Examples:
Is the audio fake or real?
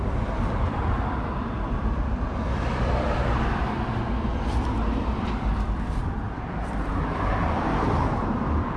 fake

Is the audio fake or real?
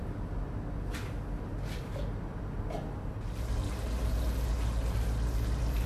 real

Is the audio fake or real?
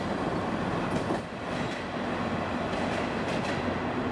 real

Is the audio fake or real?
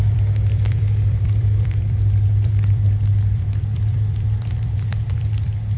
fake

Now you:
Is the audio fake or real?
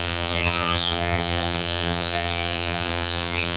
fake